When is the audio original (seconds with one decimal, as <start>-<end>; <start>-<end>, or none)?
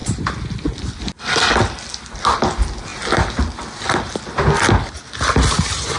0.0-6.0